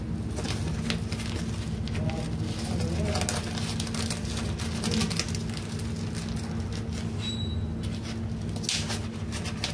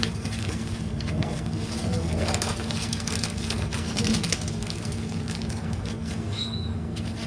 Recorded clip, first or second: first